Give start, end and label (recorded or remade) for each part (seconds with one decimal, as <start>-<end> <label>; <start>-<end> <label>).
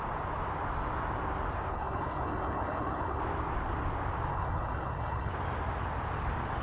0.0-1.7 recorded; 1.7-3.2 remade; 3.2-4.3 recorded; 4.3-5.3 remade; 5.3-6.6 recorded